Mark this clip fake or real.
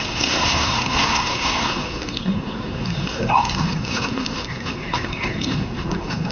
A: fake